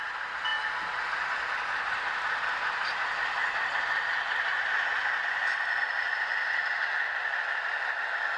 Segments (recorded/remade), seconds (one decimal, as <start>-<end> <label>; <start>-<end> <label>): 0.0-8.4 recorded